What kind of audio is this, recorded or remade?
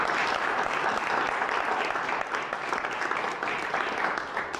recorded